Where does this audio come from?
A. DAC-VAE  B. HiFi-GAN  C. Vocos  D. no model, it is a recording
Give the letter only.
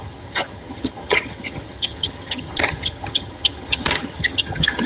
B